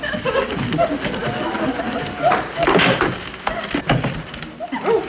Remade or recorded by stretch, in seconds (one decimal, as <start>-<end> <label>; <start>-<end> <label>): 0.0-5.1 recorded